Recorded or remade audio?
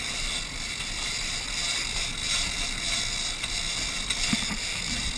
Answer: remade